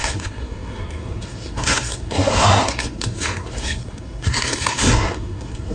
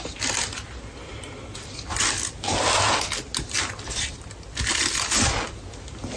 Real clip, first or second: second